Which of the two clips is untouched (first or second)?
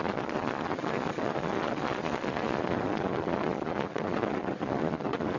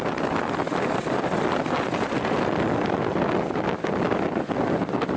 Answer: second